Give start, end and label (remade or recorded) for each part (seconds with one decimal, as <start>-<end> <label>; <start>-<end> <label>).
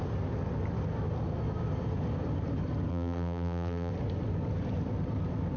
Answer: 0.0-2.9 recorded; 2.9-3.9 remade; 3.9-5.6 recorded